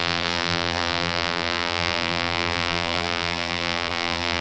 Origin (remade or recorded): remade